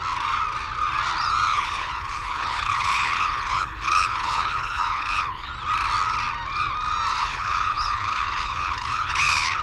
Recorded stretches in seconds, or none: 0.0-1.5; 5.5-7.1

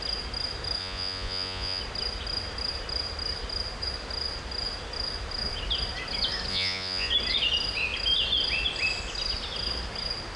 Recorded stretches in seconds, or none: 0.0-0.8; 1.8-6.5; 7.1-10.4

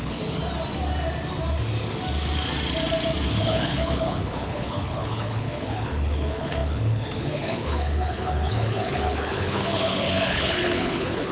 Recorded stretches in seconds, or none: 0.4-3.4

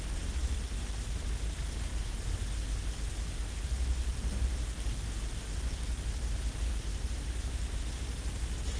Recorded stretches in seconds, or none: 0.0-1.9; 2.5-6.7; 7.7-8.8

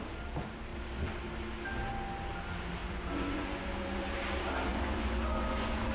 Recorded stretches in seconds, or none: 0.0-2.8; 3.7-4.7